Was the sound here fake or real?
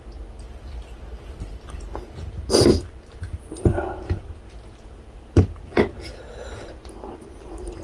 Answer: real